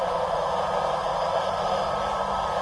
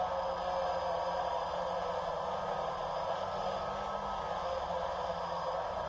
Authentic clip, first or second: second